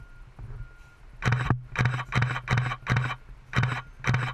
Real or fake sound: real